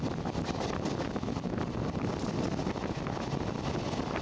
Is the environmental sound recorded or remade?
recorded